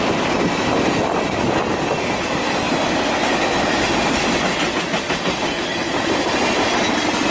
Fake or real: real